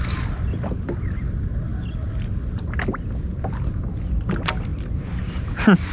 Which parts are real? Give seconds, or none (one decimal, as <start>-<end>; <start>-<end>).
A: 0.0-5.9